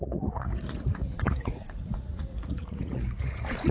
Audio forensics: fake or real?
fake